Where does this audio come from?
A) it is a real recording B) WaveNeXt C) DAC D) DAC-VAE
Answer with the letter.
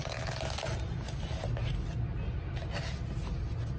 A